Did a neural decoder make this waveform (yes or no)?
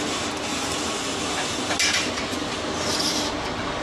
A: no